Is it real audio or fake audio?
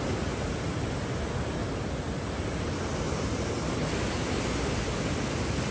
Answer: real